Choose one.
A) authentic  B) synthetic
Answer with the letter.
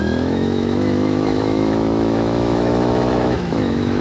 B